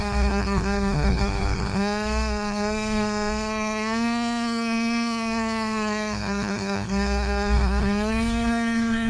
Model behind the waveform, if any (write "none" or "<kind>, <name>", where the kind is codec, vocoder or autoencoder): codec, SNAC